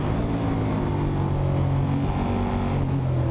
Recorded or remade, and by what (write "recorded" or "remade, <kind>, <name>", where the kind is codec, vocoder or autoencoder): recorded